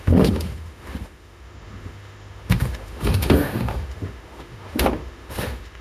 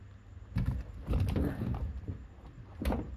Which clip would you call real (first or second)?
second